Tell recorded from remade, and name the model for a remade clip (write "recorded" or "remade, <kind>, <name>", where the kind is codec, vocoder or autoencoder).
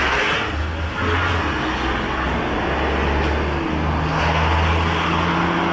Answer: recorded